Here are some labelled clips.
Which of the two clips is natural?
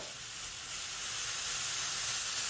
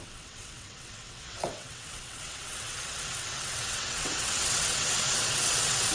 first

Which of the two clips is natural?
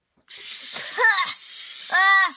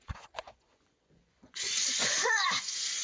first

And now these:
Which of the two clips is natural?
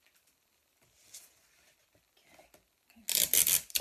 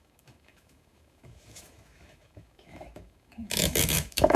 first